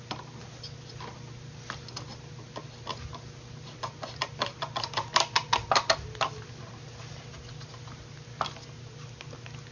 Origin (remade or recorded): recorded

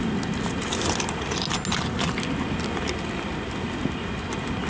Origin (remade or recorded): recorded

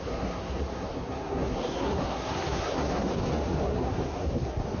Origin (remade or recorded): remade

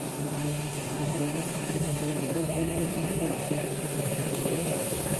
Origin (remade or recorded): remade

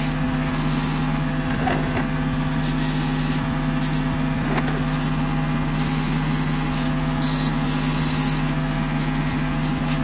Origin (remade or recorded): recorded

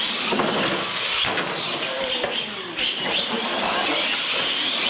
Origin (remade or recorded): recorded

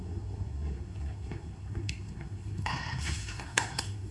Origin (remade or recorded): remade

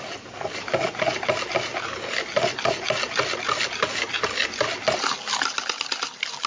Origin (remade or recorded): recorded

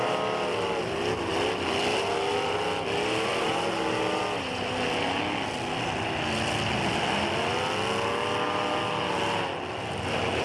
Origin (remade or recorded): recorded